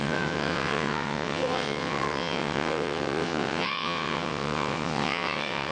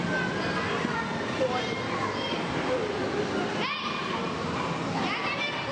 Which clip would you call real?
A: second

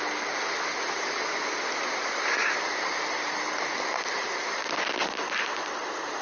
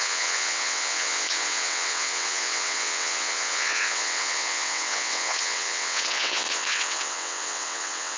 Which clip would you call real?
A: first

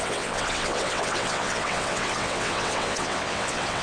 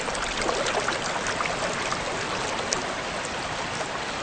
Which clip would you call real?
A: second